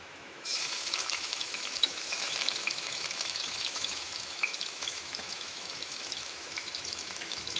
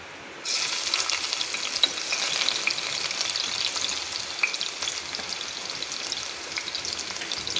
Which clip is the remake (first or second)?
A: first